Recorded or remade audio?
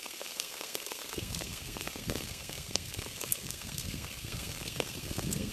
remade